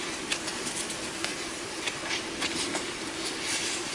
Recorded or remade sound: recorded